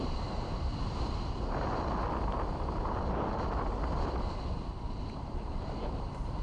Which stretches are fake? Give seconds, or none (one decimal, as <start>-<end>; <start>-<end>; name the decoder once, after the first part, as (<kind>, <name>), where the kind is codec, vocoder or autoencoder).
0.0-0.7 (vocoder, BigVGAN v2); 4.5-6.4